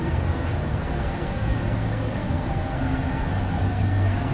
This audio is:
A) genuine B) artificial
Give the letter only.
B